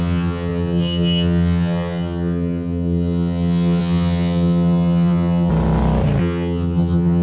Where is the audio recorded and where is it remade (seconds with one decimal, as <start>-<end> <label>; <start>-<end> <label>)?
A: 0.0-5.5 remade; 5.5-6.2 recorded; 6.2-7.2 remade

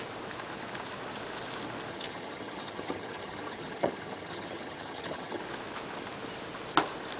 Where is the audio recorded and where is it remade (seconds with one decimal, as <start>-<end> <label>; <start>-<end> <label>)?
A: 0.0-1.9 recorded; 1.9-5.4 remade; 5.4-7.2 recorded

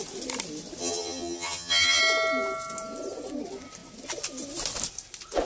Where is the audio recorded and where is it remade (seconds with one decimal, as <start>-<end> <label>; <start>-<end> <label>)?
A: 0.0-0.8 recorded; 0.8-2.0 remade; 2.0-5.5 recorded